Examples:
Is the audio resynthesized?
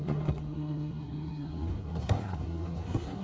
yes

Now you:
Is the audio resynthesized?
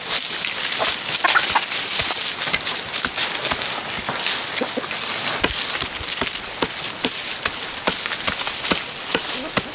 no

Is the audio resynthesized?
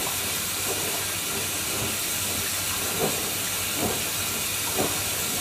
no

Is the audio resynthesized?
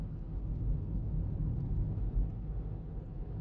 no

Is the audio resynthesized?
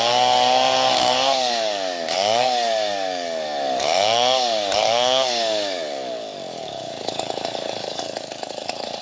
yes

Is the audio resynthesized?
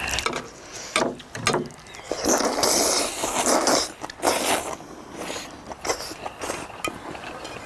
no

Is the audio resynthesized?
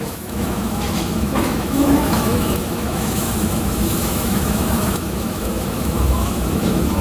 yes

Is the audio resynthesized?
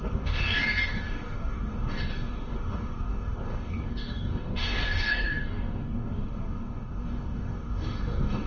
yes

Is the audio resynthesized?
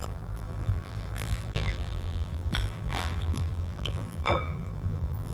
yes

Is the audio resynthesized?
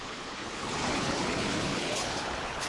yes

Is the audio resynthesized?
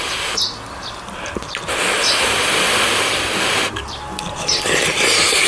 no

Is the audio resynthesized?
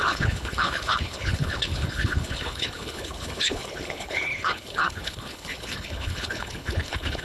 yes